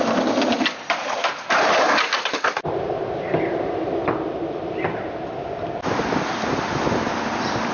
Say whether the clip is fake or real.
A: fake